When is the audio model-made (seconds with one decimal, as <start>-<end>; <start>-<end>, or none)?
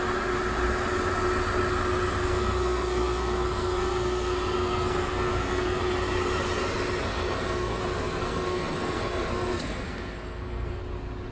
2.2-5.8; 7.1-7.8; 8.2-10.8